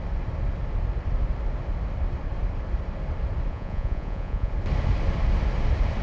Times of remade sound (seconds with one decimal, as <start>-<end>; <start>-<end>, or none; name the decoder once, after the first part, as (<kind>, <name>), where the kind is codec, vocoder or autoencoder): 3.5-4.5 (vocoder, Vocos)